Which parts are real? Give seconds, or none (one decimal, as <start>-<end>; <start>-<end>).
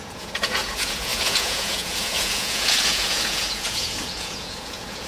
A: none